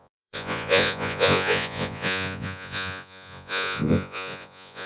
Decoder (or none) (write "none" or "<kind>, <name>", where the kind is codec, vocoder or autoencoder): vocoder, Vocos